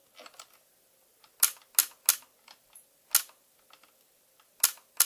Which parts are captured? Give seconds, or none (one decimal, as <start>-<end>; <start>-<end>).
0.0-5.0